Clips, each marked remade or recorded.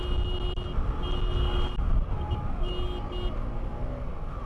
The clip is recorded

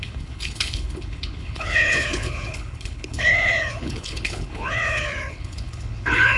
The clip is remade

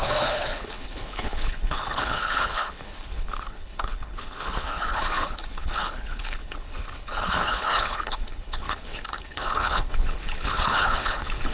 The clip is remade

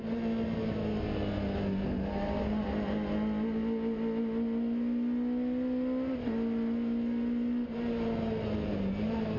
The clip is recorded